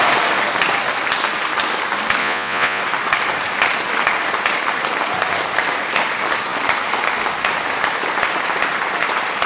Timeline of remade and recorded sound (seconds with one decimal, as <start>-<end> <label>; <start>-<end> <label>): 0.0-2.2 recorded; 2.2-2.8 remade; 2.8-9.5 recorded